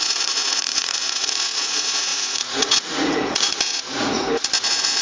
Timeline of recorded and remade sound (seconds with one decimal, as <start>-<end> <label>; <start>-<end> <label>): 0.0-5.0 remade

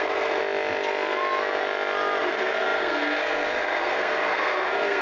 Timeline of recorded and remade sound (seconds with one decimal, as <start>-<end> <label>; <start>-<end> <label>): 0.0-0.4 remade; 0.4-2.2 recorded; 2.2-5.0 remade

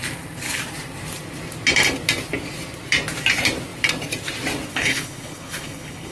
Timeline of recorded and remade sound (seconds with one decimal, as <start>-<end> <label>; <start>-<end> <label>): 0.0-4.7 recorded; 4.7-6.1 remade

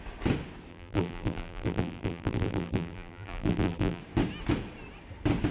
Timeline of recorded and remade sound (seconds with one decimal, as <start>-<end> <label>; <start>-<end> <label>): 0.0-0.7 recorded; 0.7-4.0 remade; 4.0-5.5 recorded